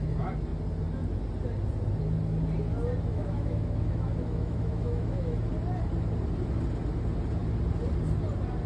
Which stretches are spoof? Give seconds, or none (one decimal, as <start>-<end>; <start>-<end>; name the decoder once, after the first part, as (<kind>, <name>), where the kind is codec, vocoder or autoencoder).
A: 3.1-5.5 (autoencoder, DAC-VAE)